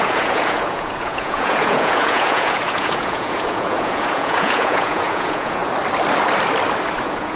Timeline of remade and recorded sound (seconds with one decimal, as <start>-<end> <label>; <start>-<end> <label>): 0.0-5.6 remade; 5.6-7.0 recorded; 7.0-7.4 remade